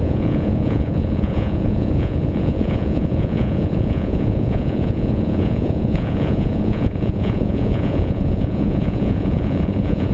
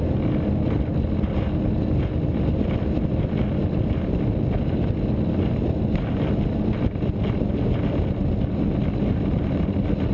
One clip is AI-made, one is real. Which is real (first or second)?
second